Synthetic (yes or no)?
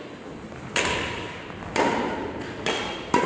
no